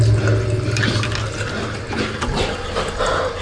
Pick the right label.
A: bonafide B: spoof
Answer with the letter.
A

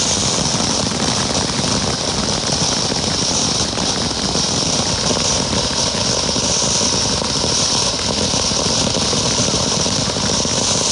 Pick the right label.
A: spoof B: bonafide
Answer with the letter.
B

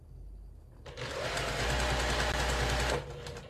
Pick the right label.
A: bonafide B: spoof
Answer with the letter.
A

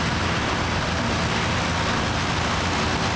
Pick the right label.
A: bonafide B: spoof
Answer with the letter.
A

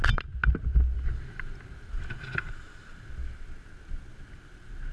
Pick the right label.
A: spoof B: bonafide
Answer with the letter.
B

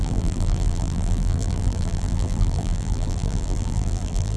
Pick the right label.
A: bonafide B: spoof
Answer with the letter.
B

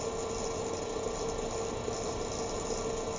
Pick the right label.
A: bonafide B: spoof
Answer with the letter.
A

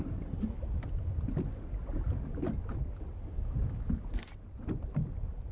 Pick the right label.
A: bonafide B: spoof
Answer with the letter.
A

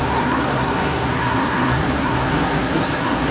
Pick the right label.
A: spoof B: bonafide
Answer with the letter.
A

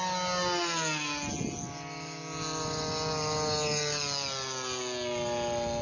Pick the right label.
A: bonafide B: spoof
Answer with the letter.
A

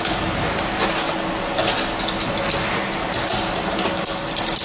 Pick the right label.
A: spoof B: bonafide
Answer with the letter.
B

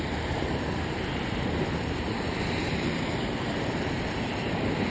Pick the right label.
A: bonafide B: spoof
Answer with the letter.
B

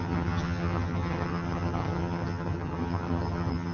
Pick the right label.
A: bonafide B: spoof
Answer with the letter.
B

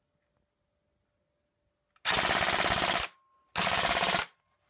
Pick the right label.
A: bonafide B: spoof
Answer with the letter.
A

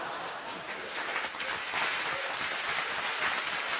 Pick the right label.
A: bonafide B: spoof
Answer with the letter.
A